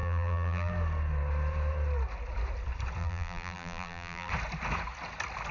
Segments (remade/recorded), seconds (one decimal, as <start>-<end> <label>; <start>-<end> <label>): 0.0-0.7 remade; 0.7-3.0 recorded; 3.0-4.3 remade; 4.3-5.5 recorded